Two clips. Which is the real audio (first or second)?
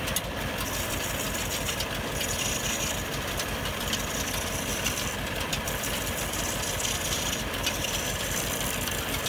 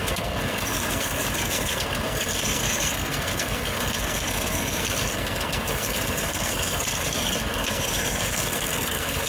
first